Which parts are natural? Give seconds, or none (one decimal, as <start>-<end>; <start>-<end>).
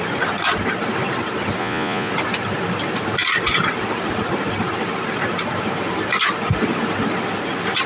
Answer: 0.0-1.6; 2.1-7.9